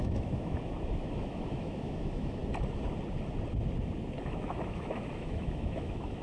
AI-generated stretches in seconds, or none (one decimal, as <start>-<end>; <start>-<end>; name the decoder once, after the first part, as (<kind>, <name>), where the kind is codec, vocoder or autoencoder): 0.0-2.4 (autoencoder, DAC-VAE); 4.2-6.2